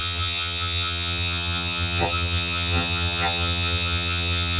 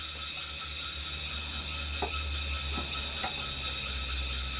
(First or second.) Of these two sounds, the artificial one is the first